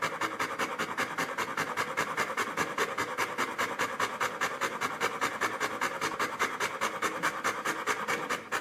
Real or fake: real